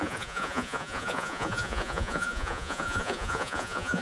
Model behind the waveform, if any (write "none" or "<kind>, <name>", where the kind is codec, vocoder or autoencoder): vocoder, Vocos